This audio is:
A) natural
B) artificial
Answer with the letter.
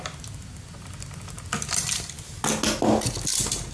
A